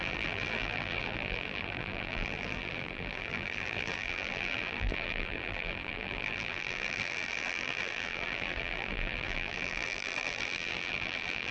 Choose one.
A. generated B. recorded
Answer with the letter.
A